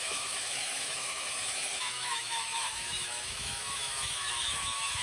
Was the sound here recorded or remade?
remade